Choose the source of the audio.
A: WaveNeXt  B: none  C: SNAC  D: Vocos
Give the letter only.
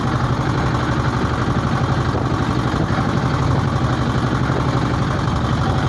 B